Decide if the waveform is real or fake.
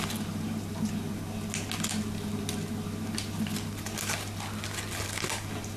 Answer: real